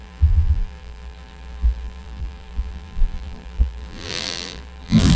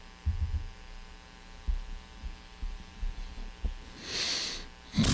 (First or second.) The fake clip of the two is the first